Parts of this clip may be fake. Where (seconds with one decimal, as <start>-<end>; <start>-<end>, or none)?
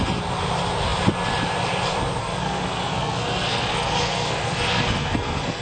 2.2-5.6